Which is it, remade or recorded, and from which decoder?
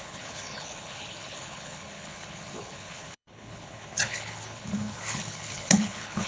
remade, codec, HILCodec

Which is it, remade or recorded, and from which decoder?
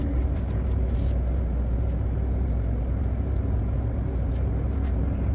recorded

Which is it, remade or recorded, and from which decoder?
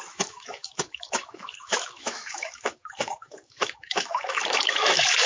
remade, autoencoder, DAC-VAE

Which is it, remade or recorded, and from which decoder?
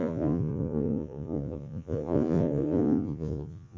remade, vocoder, Vocos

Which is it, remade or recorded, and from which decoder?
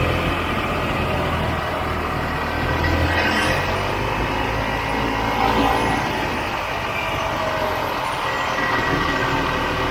recorded